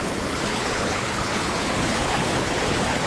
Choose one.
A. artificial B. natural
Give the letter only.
A